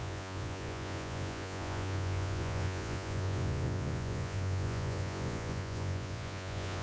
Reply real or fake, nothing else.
fake